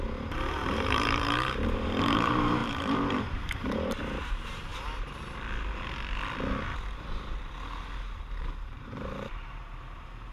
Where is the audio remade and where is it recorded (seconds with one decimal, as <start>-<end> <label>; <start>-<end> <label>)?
0.0-4.7 remade; 4.7-8.4 recorded; 8.4-10.3 remade